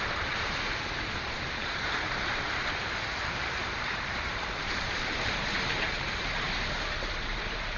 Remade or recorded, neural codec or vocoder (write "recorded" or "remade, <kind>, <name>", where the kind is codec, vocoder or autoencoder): remade, vocoder, BigVGAN v2